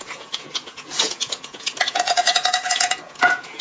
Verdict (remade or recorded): remade